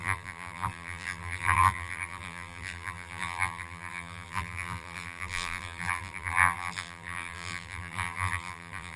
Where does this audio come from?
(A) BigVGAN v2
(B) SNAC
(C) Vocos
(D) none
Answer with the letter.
A